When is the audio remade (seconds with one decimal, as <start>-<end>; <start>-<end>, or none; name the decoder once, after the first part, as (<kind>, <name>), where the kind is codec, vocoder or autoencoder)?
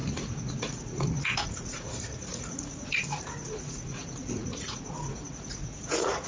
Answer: 0.0-6.3 (vocoder, Vocos)